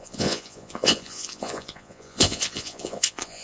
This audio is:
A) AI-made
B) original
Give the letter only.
A